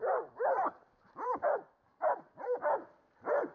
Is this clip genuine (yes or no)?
yes